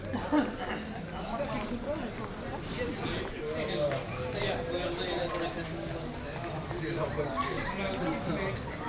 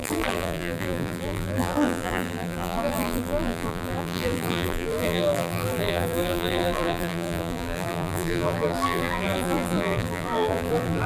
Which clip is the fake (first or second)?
second